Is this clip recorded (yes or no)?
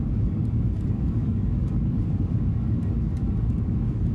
no